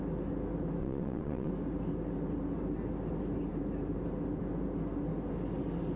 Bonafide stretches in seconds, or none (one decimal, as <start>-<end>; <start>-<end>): 0.0-0.8; 1.5-6.0